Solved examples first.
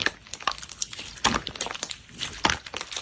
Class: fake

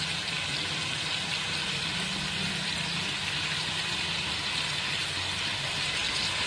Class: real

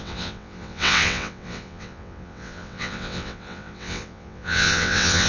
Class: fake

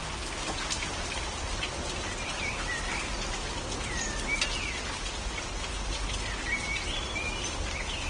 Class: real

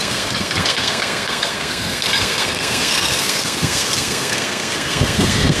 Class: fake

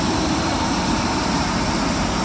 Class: fake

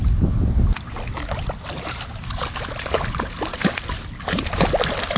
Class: real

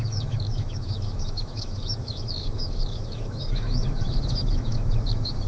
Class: fake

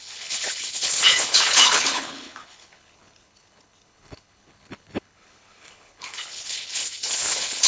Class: fake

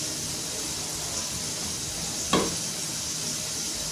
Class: real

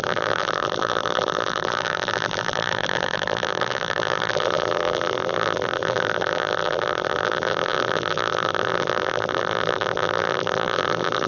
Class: fake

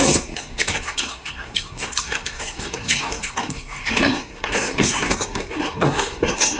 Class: fake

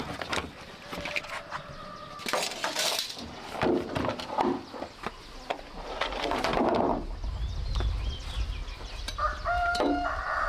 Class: real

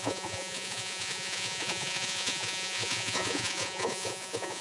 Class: fake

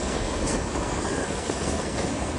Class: fake